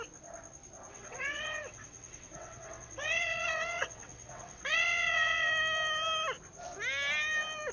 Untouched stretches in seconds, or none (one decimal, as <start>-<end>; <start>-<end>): 0.0-0.9; 5.5-7.7